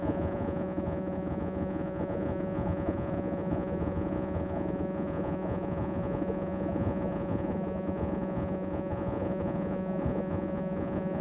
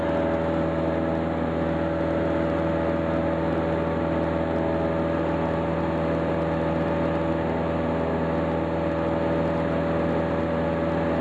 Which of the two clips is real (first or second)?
second